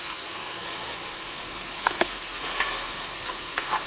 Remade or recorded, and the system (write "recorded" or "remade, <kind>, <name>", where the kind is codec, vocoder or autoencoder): remade, codec, SNAC